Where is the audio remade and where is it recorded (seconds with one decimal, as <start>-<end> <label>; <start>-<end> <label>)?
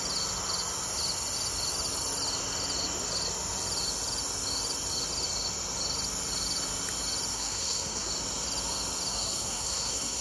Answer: 0.0-7.3 recorded; 7.3-8.1 remade; 8.1-9.1 recorded; 9.1-10.2 remade